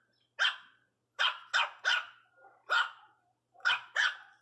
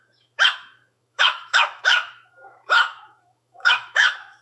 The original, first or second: first